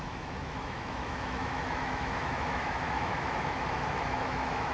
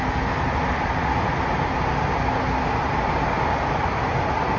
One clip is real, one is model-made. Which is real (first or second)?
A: second